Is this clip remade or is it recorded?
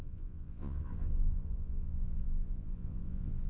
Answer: remade